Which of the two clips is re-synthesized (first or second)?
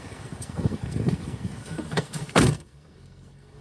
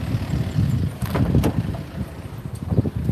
first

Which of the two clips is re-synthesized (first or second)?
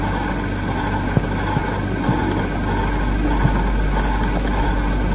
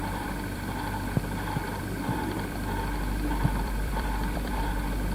second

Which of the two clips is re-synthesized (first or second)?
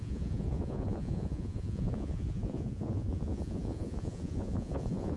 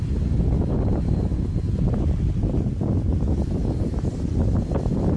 first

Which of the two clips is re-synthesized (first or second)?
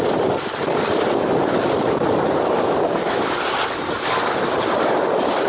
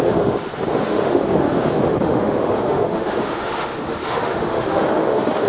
second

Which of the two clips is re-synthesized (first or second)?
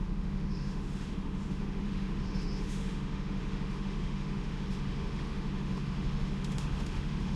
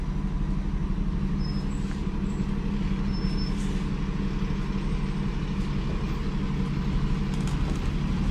first